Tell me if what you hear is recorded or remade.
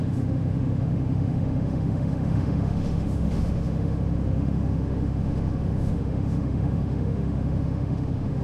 remade